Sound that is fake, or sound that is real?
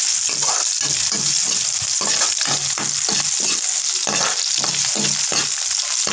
real